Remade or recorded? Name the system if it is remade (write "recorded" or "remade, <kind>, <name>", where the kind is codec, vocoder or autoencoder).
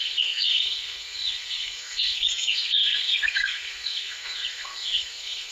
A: remade, codec, SNAC